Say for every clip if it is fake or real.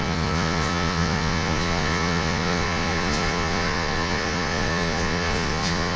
fake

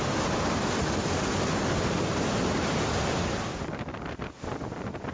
real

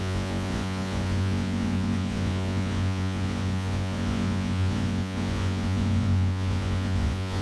fake